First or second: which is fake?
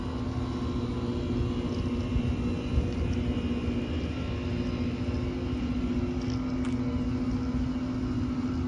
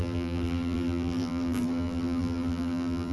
second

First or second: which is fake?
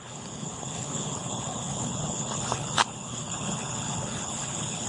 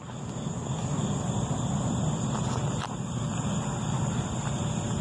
first